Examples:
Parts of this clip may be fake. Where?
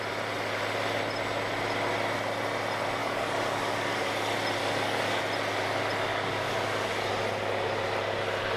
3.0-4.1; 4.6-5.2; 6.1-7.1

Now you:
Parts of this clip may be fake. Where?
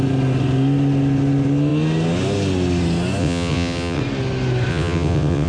3.2-4.0; 4.7-5.5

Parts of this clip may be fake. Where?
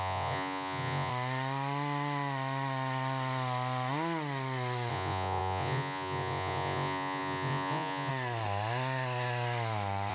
0.0-1.1; 4.9-8.1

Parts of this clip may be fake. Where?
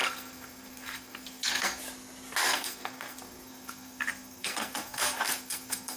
0.0-1.8; 2.4-6.0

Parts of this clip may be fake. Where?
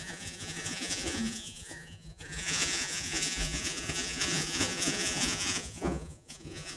0.0-6.8